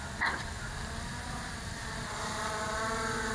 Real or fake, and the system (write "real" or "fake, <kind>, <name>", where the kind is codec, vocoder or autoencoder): real